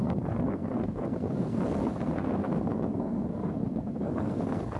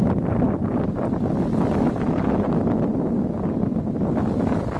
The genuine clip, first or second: second